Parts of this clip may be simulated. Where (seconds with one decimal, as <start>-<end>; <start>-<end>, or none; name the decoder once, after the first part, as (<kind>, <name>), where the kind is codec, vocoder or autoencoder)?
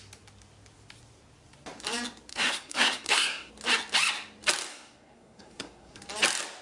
2.3-3.5 (codec, SNAC); 4.7-6.0